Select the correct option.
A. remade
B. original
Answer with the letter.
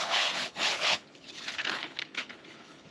A